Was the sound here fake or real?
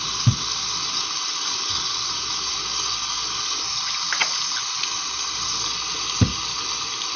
real